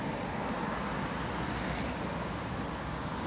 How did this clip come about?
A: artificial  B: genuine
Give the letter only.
B